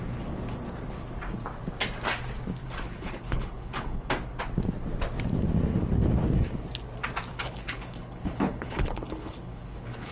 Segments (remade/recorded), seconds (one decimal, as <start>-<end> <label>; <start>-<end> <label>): 0.0-2.6 recorded; 2.6-4.1 remade; 4.1-7.3 recorded; 7.3-10.1 remade